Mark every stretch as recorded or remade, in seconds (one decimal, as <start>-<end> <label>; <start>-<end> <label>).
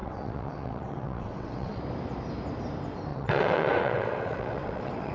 0.0-1.8 remade; 1.8-3.1 recorded; 3.1-5.1 remade